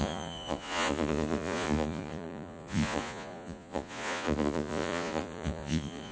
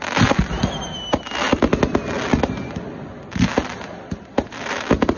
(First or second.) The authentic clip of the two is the second